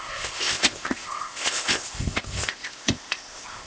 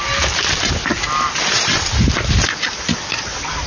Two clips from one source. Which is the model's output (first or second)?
first